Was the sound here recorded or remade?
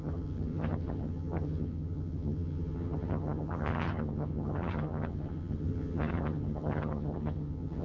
remade